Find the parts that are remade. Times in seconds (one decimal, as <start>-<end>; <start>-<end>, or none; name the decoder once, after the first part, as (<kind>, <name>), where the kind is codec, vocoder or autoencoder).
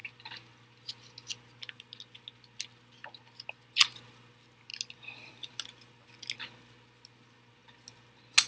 none